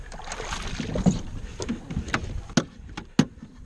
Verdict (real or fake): real